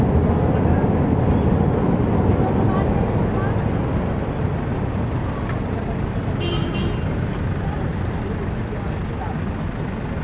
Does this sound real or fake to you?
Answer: real